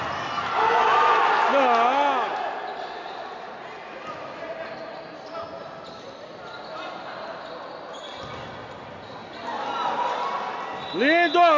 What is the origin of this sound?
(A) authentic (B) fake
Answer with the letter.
A